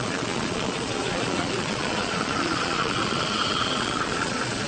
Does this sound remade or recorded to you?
remade